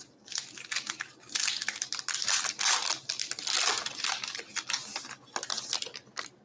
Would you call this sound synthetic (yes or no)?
no